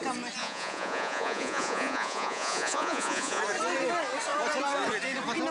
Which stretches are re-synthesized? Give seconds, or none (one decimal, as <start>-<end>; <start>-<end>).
0.4-3.4